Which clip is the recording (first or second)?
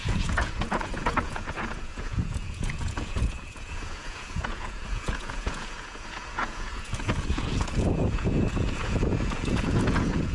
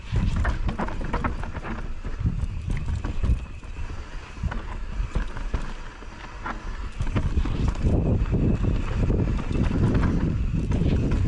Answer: second